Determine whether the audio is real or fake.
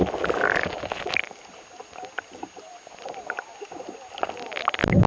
real